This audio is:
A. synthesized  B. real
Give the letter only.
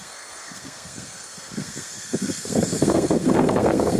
A